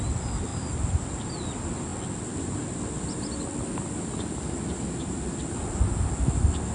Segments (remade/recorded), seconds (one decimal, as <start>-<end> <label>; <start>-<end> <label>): 0.0-6.7 recorded